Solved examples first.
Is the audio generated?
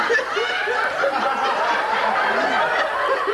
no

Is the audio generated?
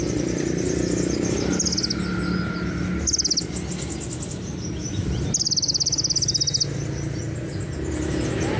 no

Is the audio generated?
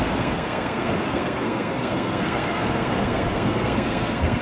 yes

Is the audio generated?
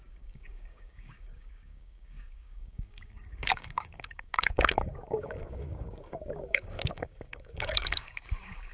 yes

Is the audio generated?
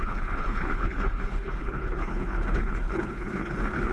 yes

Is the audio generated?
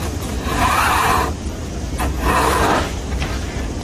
no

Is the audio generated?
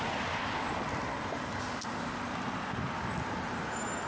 no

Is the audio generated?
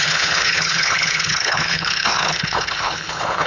yes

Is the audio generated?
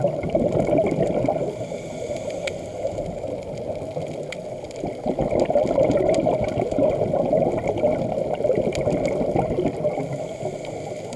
no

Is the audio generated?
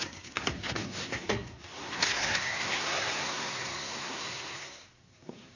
yes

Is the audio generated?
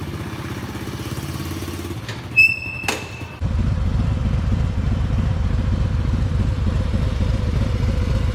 no